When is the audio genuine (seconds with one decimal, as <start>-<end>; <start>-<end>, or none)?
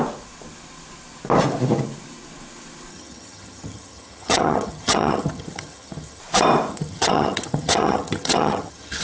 0.0-2.9; 6.2-6.7